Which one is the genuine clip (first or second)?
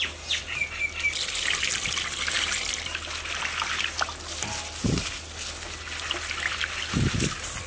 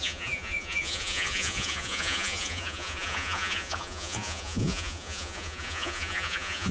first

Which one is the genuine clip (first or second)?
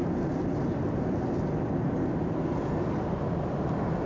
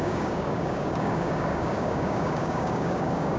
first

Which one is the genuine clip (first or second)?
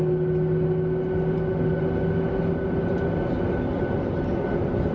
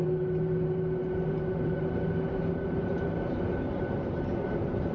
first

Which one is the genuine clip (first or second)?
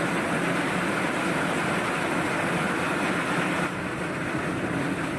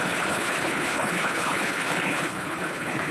first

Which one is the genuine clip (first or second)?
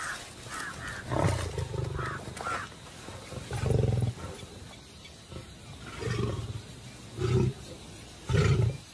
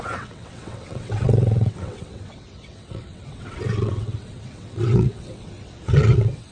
first